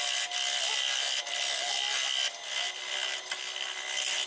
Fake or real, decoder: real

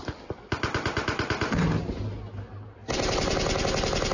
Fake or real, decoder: real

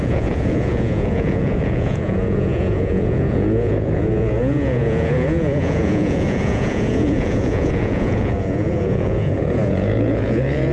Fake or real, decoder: fake, vocoder, Vocos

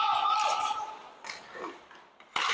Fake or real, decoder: real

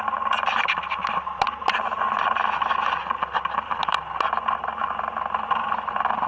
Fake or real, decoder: real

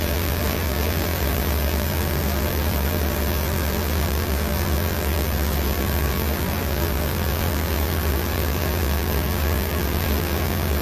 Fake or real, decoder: fake, vocoder, BigVGAN v2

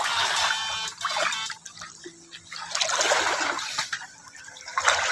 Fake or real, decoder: real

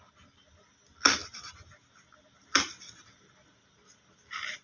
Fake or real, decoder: real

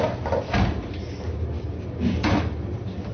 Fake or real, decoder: real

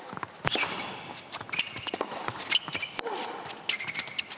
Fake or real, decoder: real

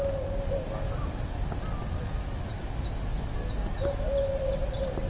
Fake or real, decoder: real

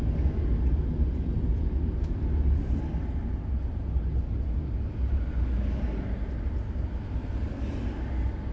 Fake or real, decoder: real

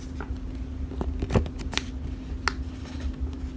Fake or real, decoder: real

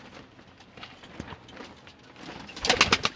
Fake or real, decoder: real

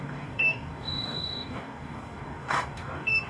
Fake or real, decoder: fake, codec, DAC